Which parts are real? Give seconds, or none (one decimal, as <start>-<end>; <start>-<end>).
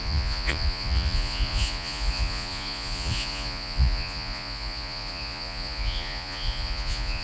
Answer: none